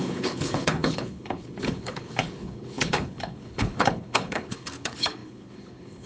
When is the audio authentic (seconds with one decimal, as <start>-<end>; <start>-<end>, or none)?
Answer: none